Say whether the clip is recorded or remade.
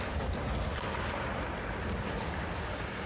recorded